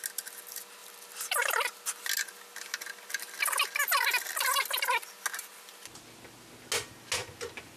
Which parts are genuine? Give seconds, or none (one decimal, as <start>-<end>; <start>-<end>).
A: 0.0-7.8